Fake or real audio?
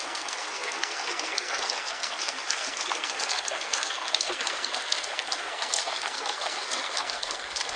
fake